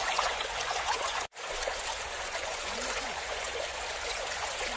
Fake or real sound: fake